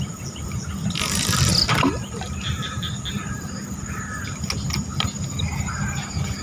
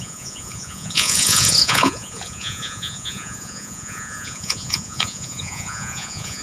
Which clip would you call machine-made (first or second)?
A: second